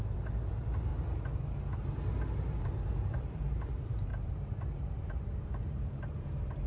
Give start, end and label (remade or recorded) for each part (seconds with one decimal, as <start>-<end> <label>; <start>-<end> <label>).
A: 0.0-0.9 remade; 0.9-2.6 recorded; 2.6-6.7 remade